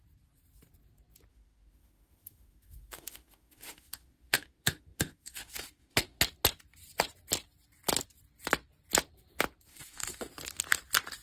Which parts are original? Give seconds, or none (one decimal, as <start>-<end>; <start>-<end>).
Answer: 0.0-1.3; 6.2-9.7; 10.3-11.2